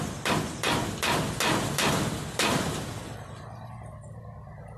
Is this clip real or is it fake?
real